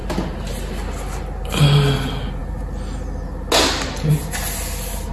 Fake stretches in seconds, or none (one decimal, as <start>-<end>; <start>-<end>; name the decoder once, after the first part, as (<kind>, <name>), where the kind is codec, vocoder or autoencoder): none